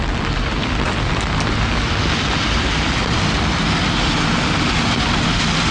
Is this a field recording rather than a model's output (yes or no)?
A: yes